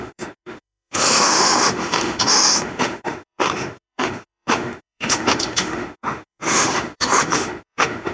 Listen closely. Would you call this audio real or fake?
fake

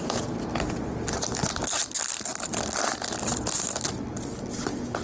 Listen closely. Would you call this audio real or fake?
real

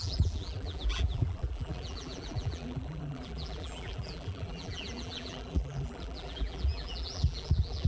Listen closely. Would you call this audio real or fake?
fake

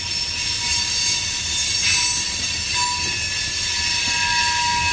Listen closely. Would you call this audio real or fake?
real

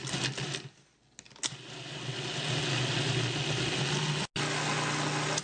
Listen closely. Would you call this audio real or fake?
real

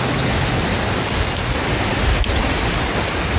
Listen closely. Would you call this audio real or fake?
real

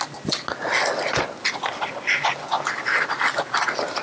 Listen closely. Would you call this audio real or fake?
real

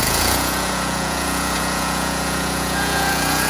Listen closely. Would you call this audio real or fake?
fake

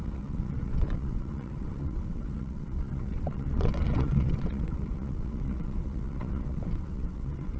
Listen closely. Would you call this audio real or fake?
fake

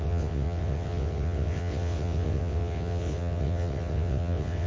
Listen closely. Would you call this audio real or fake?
fake